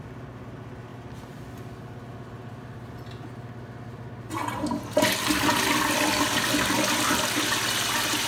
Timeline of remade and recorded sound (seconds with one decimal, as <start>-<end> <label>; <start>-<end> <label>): 0.0-8.3 recorded